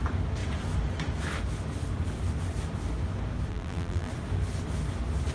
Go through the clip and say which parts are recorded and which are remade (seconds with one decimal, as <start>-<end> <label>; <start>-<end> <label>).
0.0-3.5 recorded; 3.5-4.1 remade; 4.1-5.3 recorded